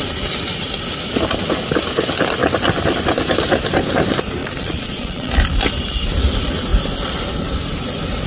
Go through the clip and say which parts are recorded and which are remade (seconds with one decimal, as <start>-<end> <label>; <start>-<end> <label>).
0.0-4.4 recorded; 4.4-5.3 remade; 5.3-8.3 recorded